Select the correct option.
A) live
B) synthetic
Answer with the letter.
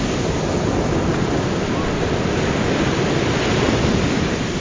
A